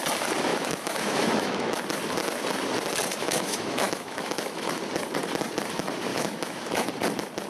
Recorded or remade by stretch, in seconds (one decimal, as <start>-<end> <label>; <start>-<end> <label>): 0.0-0.5 recorded; 0.5-1.8 remade; 1.8-3.2 recorded; 3.2-4.8 remade; 4.8-6.1 recorded; 6.1-6.9 remade; 6.9-7.5 recorded